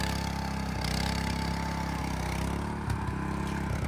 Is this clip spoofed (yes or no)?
no